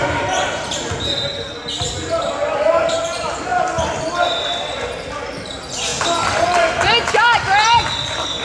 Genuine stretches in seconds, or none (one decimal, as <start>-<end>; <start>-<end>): 3.5-5.2; 5.9-7.1